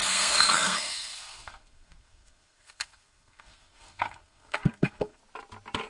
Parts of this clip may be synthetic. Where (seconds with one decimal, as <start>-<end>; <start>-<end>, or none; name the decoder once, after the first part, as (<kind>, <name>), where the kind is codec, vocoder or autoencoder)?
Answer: 0.0-5.2 (codec, SNAC)